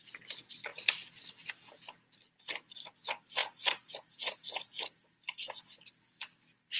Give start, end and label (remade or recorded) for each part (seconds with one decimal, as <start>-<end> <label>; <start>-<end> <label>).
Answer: 0.0-6.8 recorded